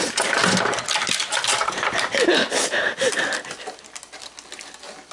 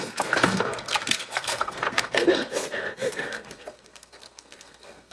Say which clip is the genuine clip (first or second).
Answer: first